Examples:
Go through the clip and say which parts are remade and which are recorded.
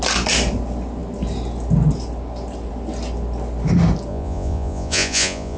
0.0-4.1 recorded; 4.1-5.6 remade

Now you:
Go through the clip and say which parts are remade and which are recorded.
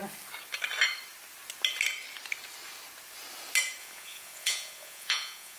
0.0-3.8 recorded; 3.8-5.6 remade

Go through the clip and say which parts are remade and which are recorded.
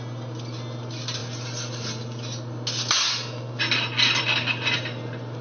0.0-5.4 recorded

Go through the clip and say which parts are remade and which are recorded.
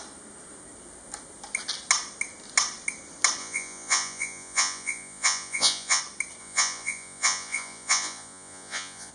0.0-3.4 recorded; 3.4-6.0 remade; 6.0-6.4 recorded; 6.4-9.1 remade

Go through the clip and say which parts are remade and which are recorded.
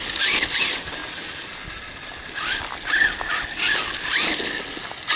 0.0-5.2 recorded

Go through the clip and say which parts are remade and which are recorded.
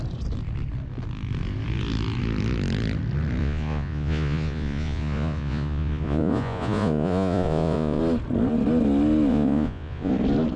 0.0-3.4 recorded; 3.4-8.0 remade; 8.0-9.3 recorded; 9.3-10.1 remade; 10.1-10.6 recorded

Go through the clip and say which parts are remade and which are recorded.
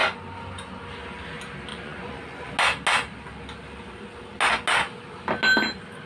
0.0-1.7 recorded; 1.7-2.5 remade; 2.5-6.1 recorded